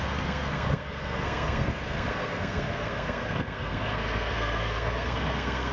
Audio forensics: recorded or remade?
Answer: remade